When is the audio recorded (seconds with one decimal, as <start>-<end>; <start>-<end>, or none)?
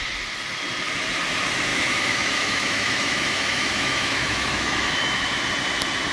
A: 0.0-1.7; 5.4-6.1